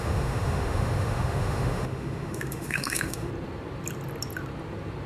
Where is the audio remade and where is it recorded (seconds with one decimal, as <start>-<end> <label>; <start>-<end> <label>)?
0.0-3.3 remade; 3.3-5.1 recorded